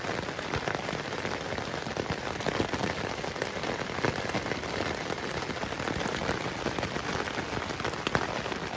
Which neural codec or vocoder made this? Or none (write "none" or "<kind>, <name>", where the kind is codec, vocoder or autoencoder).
none